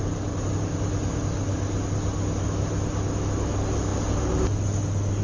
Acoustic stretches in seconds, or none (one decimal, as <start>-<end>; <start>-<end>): 0.0-5.2